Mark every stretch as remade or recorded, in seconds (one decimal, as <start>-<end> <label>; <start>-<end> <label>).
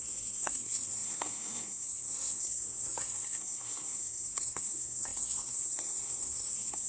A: 0.0-6.9 remade